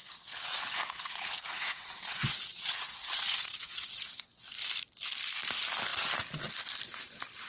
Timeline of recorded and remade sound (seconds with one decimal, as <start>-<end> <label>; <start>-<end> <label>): 0.0-4.5 remade; 4.5-7.5 recorded